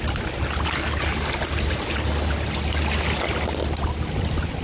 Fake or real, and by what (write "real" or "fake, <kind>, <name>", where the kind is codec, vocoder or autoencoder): real